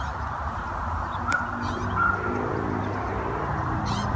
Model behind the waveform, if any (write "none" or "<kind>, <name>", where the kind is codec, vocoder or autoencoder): none